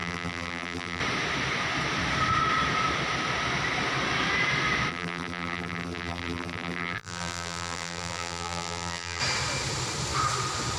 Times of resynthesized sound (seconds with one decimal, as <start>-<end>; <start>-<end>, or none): 0.0-1.0; 4.9-9.2